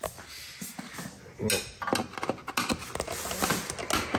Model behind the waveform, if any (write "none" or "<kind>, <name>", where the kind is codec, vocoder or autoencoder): none